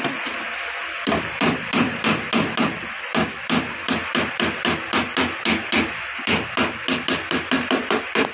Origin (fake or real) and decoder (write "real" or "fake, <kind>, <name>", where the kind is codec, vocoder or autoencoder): real